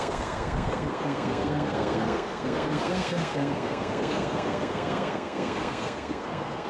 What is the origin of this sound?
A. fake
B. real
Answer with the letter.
A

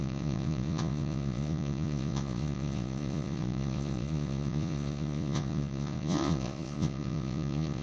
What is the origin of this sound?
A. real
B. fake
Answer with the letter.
B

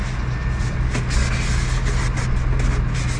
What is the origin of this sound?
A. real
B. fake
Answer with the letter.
A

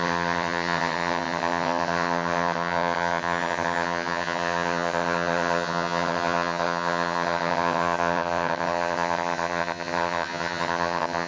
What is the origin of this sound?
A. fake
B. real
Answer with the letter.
A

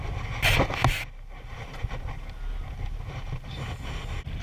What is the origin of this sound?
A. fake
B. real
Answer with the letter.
B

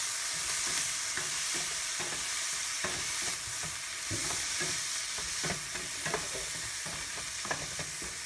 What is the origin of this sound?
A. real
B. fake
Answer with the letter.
B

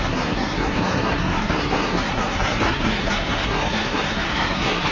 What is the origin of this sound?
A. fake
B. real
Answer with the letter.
A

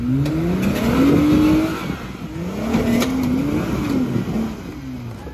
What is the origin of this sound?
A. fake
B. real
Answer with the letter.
B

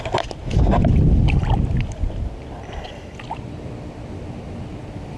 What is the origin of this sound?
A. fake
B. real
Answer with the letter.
B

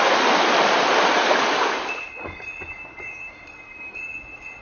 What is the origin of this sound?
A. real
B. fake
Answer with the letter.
A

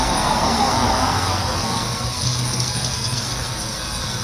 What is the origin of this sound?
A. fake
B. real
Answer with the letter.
A